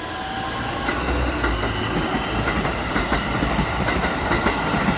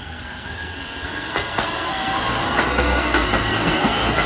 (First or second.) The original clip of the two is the first